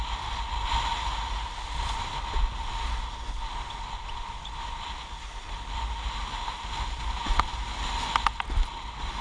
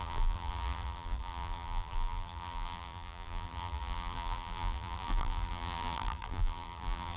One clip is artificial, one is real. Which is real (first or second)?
first